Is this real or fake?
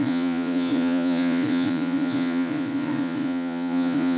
fake